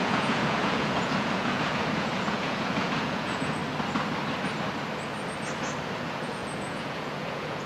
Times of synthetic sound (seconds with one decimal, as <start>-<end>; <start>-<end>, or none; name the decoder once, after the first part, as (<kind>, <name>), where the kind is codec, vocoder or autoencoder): 0.0-3.6 (vocoder, Vocos); 6.0-7.7